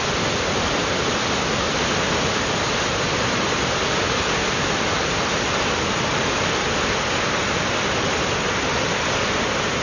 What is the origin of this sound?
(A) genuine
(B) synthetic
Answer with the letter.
A